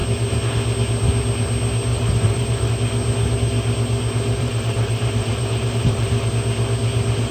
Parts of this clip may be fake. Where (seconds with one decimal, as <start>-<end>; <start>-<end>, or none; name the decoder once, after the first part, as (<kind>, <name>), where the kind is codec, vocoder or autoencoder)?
1.9-2.7 (vocoder, BigVGAN v2); 4.4-6.3